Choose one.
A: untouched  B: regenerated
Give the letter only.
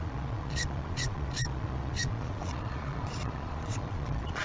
B